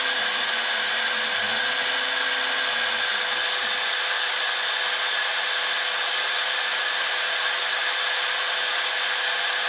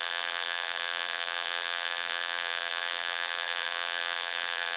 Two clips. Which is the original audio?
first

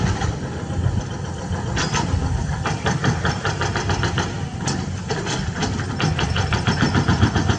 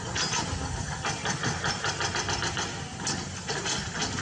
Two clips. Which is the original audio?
second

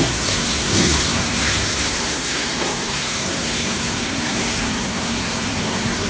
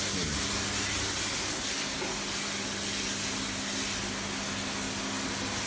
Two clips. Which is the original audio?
second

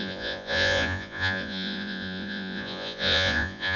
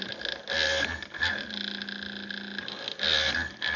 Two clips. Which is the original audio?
second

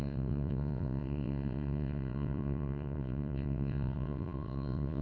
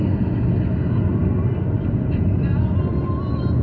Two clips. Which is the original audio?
second